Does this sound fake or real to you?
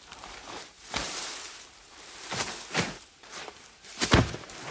fake